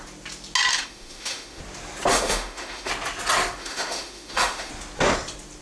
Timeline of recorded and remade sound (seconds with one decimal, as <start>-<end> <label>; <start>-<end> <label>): 0.0-0.7 recorded; 0.7-1.6 remade; 1.6-2.1 recorded; 2.1-2.9 remade; 2.9-3.6 recorded; 3.6-4.7 remade; 4.7-5.6 recorded